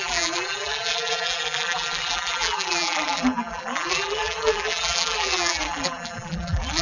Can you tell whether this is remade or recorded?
remade